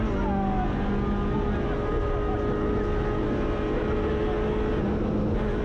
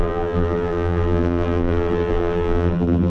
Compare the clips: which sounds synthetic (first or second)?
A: second